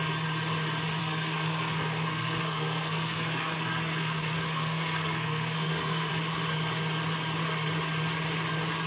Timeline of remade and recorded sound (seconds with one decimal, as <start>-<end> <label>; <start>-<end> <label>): 0.0-1.0 recorded; 1.0-6.1 remade; 6.1-8.9 recorded